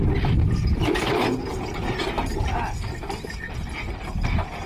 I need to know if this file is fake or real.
real